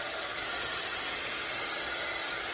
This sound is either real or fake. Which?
fake